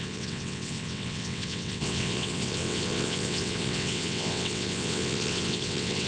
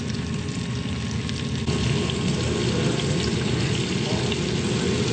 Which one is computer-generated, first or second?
first